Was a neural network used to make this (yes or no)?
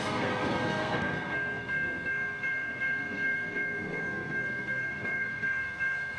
yes